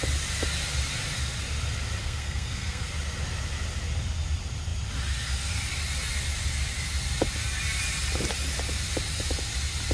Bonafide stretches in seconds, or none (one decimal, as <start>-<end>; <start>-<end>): 0.0-2.0; 2.9-9.9